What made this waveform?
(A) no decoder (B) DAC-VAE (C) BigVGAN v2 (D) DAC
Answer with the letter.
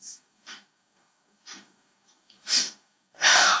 D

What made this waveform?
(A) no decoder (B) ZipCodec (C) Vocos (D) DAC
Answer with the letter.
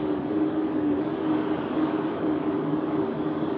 D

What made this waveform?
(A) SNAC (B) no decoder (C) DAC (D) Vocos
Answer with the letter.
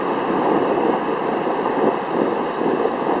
B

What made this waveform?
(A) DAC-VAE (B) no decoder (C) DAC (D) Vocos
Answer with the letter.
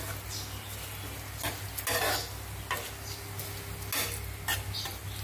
B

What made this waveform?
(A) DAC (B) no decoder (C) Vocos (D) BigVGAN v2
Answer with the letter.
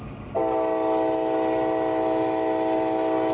B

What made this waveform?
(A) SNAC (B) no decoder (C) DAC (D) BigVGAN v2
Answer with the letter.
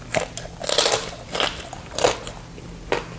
B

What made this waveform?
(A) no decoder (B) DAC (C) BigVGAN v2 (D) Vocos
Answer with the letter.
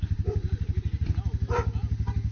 A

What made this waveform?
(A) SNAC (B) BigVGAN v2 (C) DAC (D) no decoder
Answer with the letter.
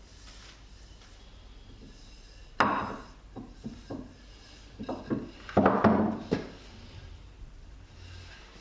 D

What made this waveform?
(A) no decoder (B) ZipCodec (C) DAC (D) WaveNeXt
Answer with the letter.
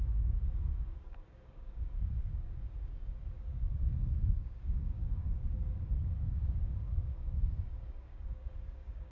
C